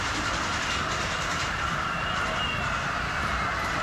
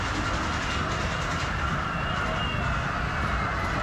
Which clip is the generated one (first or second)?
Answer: first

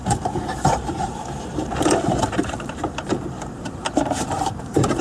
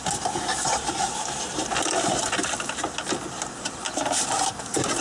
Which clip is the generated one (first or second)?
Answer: first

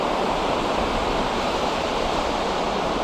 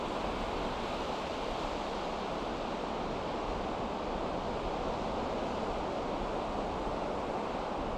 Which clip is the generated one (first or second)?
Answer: first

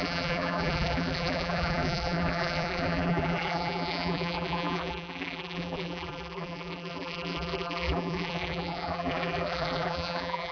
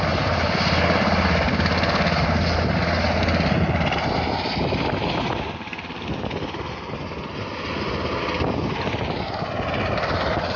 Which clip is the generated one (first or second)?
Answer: first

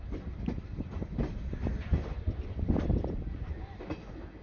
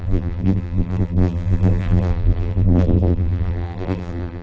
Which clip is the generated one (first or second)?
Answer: second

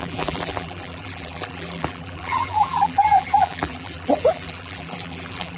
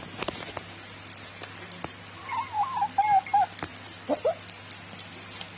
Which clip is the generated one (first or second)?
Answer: first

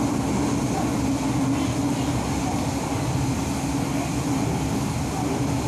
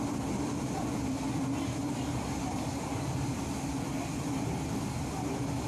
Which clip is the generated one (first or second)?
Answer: second